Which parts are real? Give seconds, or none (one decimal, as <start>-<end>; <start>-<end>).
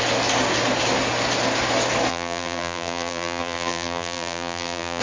0.0-2.1